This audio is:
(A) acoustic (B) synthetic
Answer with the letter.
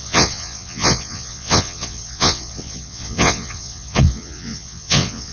B